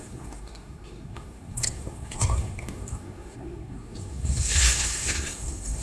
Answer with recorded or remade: remade